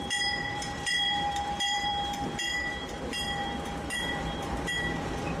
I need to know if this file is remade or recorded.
remade